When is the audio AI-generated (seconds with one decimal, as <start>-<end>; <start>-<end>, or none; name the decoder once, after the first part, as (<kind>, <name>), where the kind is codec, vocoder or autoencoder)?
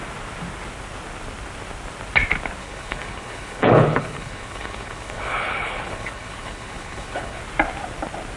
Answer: 2.6-7.4 (codec, HILCodec)